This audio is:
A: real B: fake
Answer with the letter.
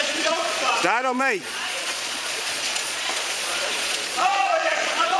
B